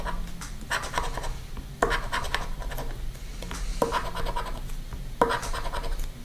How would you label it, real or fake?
real